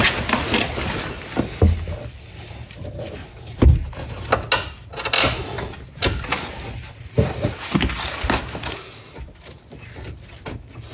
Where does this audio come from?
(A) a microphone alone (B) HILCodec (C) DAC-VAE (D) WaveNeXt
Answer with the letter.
A